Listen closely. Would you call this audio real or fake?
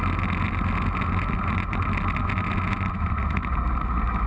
real